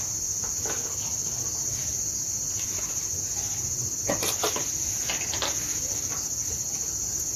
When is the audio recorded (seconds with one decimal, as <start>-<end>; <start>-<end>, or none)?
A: 0.0-7.4

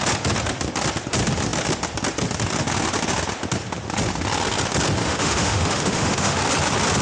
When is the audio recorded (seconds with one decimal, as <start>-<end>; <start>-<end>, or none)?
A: 0.0-5.0; 6.4-7.0

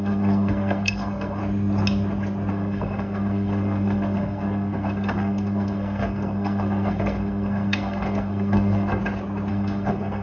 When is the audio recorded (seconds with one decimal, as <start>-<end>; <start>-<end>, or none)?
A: 1.4-2.5; 9.0-9.5

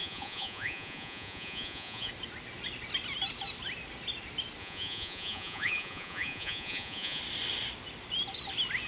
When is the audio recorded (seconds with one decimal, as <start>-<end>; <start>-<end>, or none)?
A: 2.1-4.6; 7.2-8.9